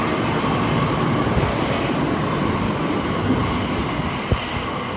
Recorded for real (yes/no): yes